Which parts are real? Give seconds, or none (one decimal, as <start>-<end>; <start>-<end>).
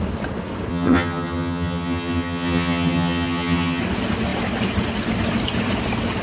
0.0-0.7; 3.8-6.2